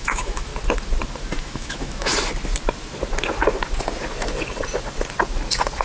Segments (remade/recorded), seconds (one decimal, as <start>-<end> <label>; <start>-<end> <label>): 0.0-0.5 remade; 0.5-1.4 recorded; 1.4-2.1 remade; 2.1-5.8 recorded